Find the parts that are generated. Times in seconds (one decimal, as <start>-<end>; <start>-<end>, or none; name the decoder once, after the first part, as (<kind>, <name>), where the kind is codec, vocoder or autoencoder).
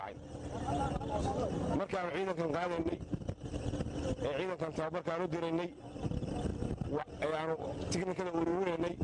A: 1.2-3.7 (vocoder, BigVGAN v2); 6.5-7.0; 8.1-9.0